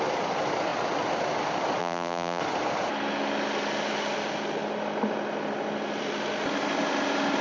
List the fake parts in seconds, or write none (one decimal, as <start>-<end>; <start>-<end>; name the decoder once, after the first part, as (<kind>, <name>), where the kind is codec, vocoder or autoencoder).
1.8-2.4 (vocoder, BigVGAN v2)